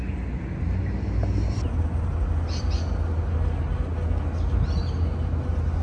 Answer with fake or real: real